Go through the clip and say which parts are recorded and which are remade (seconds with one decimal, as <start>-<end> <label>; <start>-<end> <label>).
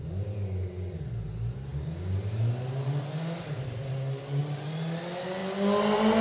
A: 0.0-6.2 recorded